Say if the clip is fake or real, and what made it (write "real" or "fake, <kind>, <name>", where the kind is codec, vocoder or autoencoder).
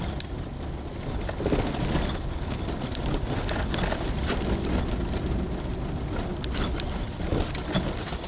real